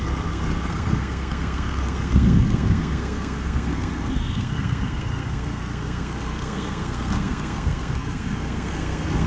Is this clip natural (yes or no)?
no